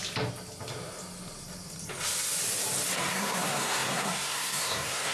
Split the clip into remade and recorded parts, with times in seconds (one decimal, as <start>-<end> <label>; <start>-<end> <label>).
0.0-3.1 recorded; 3.1-5.1 remade